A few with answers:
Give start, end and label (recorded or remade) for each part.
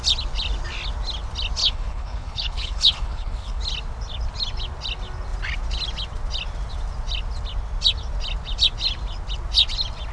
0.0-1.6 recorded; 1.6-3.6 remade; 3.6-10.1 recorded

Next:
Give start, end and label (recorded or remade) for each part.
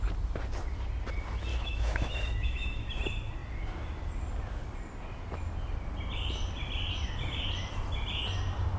0.0-1.5 recorded; 1.5-2.9 remade; 2.9-8.8 recorded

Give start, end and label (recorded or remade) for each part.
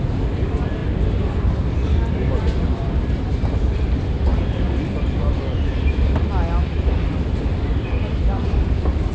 0.0-0.8 remade; 0.8-3.3 recorded; 3.3-4.3 remade; 4.3-5.3 recorded; 5.3-6.6 remade; 6.6-7.4 recorded; 7.4-9.1 remade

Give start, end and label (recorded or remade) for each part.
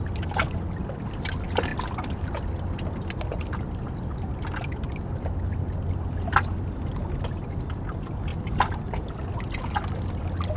0.0-10.6 recorded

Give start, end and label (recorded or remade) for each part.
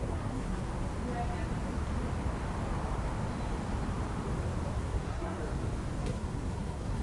0.0-0.6 remade; 0.6-4.8 recorded; 4.8-5.4 remade; 5.4-6.0 recorded; 6.0-7.0 remade